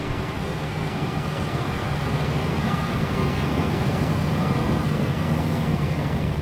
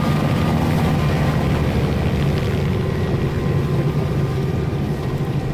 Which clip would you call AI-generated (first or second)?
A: first